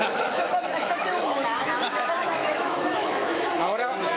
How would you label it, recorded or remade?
remade